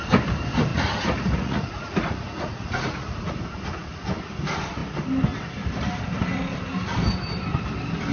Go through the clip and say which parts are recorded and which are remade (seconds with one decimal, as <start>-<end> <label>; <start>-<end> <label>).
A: 0.0-0.7 recorded; 0.7-3.3 remade; 3.3-8.1 recorded